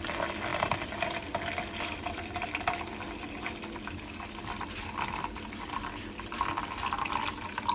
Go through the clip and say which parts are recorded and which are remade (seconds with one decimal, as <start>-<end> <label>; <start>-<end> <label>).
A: 0.0-7.7 recorded